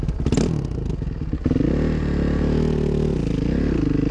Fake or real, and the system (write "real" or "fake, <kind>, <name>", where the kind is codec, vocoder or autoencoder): real